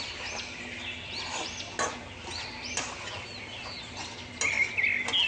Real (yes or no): yes